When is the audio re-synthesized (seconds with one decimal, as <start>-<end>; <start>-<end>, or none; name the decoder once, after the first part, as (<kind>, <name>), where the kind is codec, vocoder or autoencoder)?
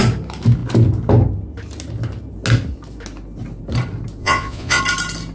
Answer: 4.2-4.8 (vocoder, Vocos)